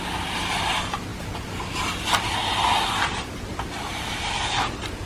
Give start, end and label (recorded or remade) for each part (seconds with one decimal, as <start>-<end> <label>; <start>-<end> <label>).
0.0-5.1 recorded